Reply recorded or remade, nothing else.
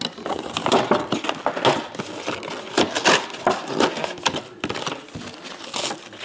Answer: recorded